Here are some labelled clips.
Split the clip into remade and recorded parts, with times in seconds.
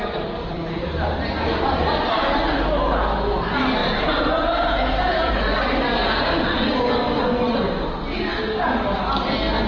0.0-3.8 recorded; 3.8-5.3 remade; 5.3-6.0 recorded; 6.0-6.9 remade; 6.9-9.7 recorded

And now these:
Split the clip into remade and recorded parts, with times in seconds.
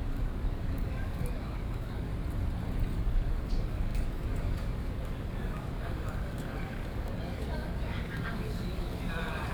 0.0-2.1 remade; 2.1-2.8 recorded; 2.8-9.5 remade